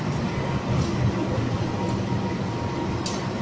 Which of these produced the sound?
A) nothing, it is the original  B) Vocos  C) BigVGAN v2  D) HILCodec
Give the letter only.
A